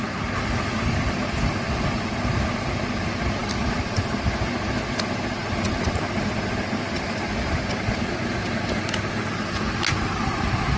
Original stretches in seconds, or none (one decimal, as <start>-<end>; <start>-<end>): 0.0-3.4; 4.2-10.8